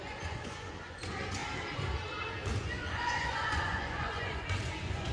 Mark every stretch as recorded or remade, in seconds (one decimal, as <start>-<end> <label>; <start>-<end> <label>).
0.0-1.4 remade; 1.4-2.6 recorded; 2.6-5.1 remade